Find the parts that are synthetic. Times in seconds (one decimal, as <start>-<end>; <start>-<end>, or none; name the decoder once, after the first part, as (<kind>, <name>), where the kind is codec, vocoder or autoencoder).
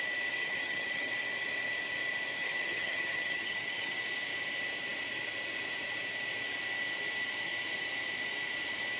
0.4-1.1 (vocoder, HiFi-GAN); 2.4-4.0